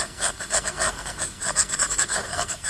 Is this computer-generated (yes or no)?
yes